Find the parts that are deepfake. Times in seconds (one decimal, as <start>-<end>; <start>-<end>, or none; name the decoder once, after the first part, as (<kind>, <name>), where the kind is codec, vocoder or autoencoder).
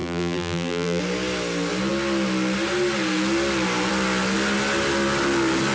0.0-1.0 (vocoder, BigVGAN v2)